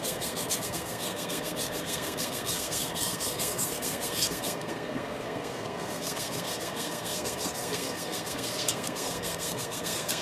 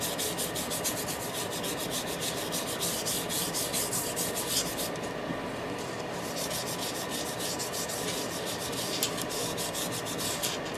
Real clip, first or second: second